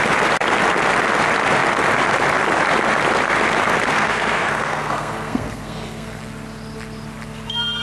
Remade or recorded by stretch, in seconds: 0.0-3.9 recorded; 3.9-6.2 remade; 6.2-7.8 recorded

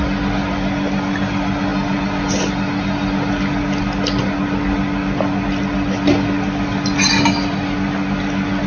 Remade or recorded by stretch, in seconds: 0.0-8.7 recorded